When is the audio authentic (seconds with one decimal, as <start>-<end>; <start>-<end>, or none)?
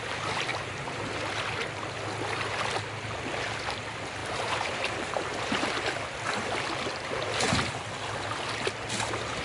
0.0-0.5; 1.1-4.2; 5.8-9.4